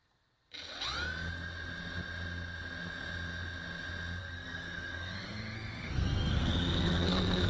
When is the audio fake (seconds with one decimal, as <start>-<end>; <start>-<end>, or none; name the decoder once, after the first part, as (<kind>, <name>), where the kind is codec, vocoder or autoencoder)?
4.2-7.5 (codec, SNAC)